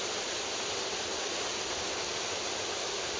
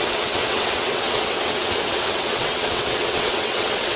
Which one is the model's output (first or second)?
second